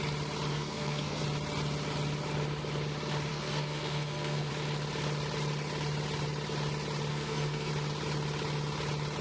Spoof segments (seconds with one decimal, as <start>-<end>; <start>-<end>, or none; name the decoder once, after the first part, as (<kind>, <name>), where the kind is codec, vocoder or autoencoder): 0.5-1.2 (codec, SNAC); 3.3-4.5; 7.1-7.7